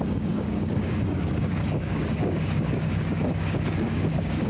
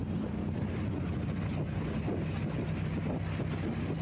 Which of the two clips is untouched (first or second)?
second